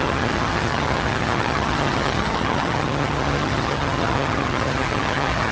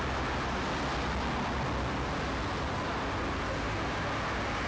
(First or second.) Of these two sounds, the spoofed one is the first